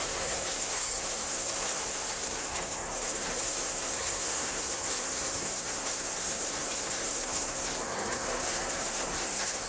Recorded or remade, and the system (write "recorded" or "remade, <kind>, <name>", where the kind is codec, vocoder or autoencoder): remade, codec, SNAC